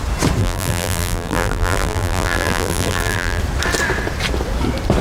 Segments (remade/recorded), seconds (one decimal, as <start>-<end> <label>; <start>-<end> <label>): 0.0-0.4 recorded; 0.4-3.4 remade; 3.4-5.0 recorded